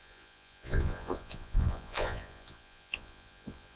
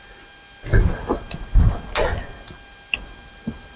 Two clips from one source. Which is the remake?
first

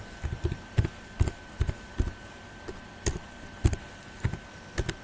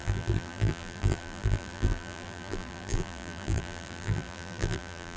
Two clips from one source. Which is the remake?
second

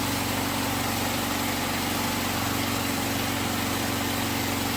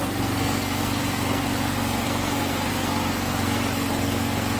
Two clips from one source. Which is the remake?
second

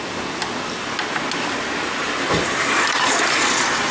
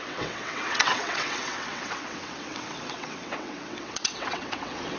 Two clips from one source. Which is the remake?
second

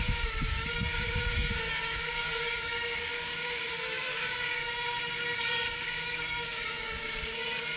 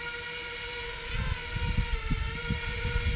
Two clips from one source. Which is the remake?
first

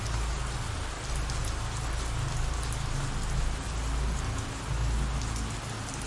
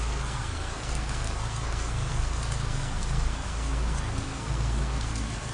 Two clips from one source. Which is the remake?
second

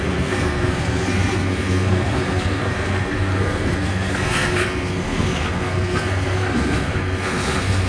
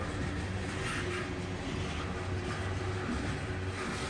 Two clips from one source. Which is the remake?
first